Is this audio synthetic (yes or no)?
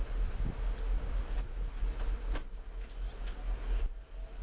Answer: no